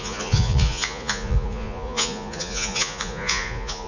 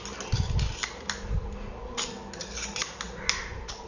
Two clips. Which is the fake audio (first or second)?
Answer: first